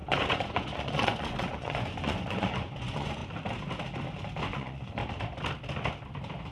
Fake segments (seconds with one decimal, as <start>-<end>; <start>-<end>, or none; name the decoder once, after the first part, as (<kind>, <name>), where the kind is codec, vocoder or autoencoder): 0.0-3.2 (vocoder, Vocos); 4.4-5.0